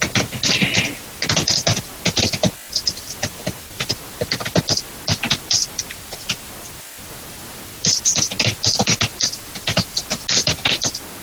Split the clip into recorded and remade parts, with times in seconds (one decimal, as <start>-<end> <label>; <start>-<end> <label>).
0.0-11.2 recorded